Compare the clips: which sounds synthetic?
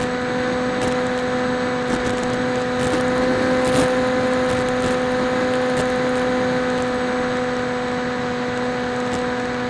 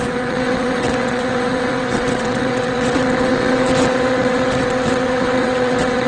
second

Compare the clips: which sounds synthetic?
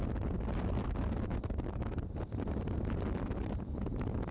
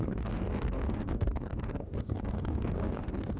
second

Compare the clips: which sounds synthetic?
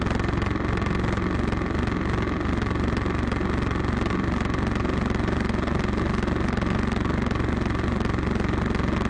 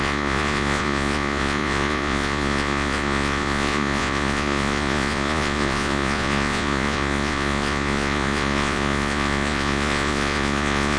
second